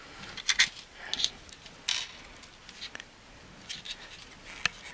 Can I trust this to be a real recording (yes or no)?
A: yes